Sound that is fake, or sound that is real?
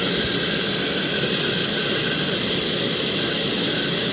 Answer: real